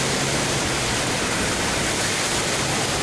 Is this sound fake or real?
real